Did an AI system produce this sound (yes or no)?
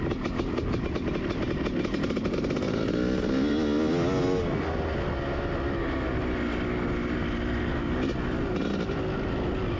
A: no